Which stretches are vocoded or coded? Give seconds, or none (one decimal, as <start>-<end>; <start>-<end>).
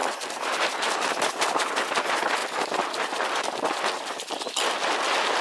0.0-0.6